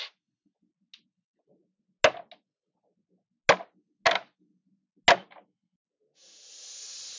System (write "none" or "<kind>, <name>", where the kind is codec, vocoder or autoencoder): none